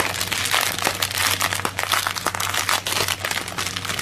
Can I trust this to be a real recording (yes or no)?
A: yes